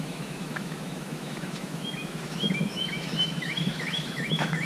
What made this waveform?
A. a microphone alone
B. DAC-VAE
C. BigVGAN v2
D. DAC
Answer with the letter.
B